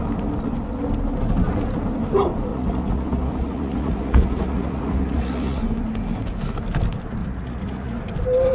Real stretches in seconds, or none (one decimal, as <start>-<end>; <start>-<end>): 0.0-2.5; 5.6-7.2; 8.0-8.5